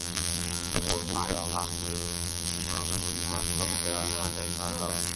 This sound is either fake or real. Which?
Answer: fake